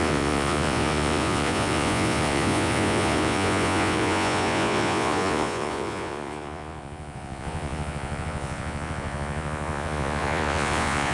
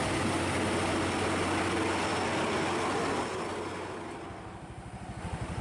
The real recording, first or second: second